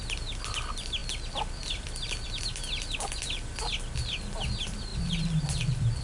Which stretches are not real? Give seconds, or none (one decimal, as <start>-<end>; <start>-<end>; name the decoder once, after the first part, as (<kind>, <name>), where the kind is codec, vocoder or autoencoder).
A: 0.0-6.0 (vocoder, BigVGAN v2)